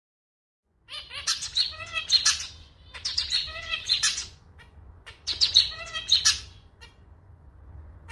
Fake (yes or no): yes